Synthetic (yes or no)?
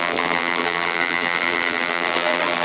yes